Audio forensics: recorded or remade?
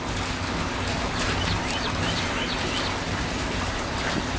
remade